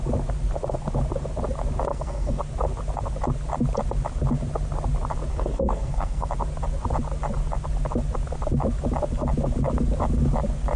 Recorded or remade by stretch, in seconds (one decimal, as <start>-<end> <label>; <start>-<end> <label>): 0.0-1.9 recorded; 1.9-2.4 remade; 2.4-5.3 recorded; 5.3-6.3 remade; 6.3-10.8 recorded